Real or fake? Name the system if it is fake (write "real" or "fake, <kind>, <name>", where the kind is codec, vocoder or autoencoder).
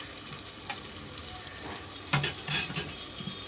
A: real